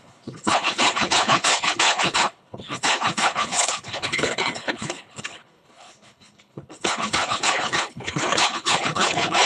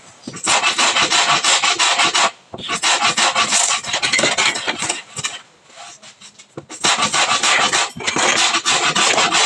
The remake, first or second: first